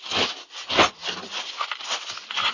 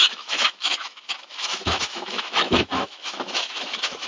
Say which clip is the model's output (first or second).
second